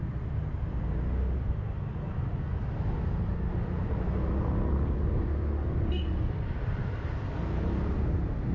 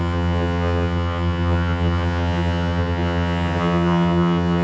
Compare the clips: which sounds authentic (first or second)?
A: first